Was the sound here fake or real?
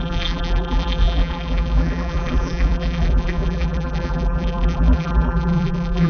fake